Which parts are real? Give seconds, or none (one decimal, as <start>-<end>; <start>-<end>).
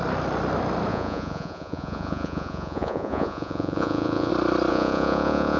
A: 0.0-0.9; 4.3-4.7